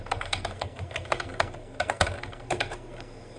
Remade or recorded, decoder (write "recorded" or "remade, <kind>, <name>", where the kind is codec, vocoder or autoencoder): remade, codec, SNAC